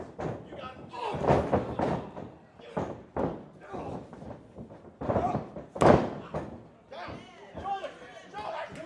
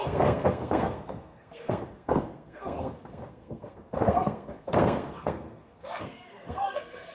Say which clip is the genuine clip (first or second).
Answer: first